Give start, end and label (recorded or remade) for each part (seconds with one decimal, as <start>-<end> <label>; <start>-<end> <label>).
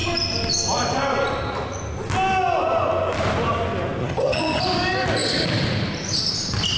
0.0-4.0 recorded; 4.0-4.6 remade; 4.6-6.8 recorded